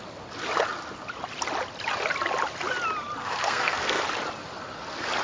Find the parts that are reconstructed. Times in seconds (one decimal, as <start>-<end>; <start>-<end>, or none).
3.2-4.0